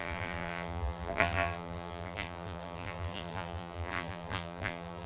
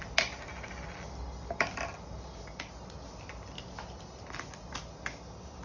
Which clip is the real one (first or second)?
second